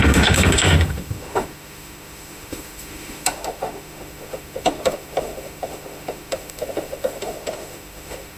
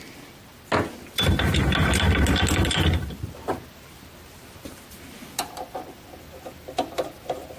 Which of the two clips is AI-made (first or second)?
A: first